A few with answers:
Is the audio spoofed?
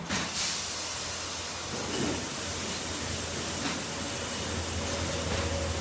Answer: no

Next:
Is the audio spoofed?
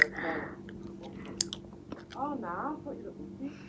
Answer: no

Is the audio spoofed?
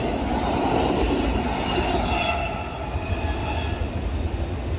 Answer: no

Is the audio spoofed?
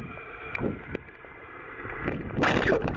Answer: no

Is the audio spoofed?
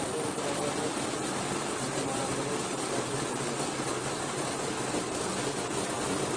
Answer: no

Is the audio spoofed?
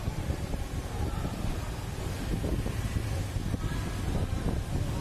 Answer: no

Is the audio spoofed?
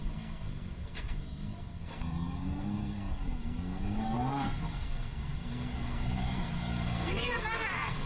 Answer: yes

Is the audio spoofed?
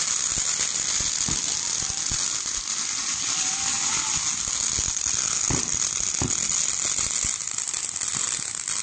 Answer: no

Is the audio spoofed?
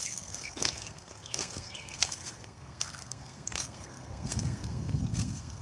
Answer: yes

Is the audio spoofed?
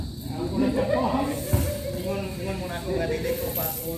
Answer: no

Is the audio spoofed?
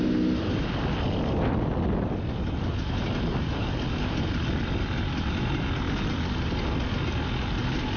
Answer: no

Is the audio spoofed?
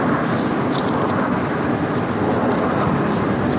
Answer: no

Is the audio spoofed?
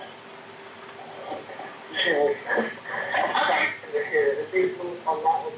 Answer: no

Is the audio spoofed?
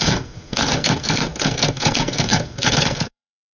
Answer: yes